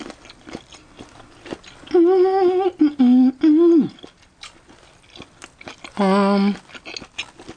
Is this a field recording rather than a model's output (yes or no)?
yes